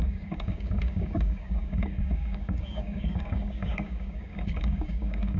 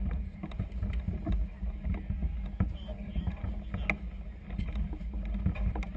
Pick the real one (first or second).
second